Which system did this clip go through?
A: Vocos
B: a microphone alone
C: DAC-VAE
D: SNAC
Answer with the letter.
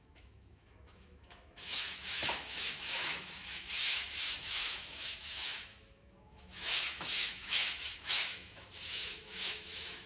C